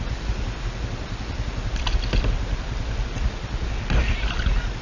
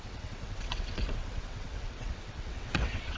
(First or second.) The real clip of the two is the first